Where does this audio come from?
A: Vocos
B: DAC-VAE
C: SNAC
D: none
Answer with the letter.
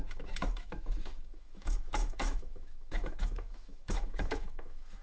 B